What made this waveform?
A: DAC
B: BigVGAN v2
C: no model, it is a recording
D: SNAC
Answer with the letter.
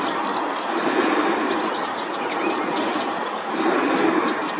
C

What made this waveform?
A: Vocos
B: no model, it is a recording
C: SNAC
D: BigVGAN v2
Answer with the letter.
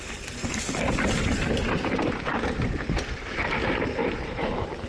B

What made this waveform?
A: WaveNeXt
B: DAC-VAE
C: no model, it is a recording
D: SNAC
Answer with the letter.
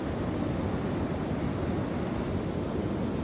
C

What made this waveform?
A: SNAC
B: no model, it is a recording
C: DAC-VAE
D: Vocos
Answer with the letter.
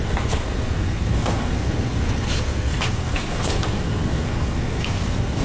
A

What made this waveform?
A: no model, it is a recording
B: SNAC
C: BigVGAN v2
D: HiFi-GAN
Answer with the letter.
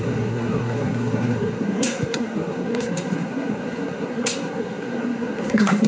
B